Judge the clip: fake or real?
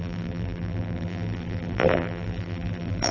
fake